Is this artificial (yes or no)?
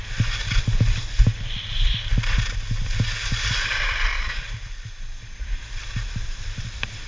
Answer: no